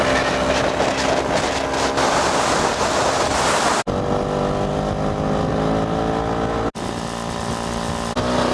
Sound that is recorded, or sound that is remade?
recorded